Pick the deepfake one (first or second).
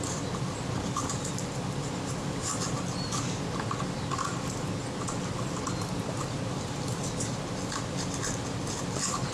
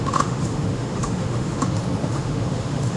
second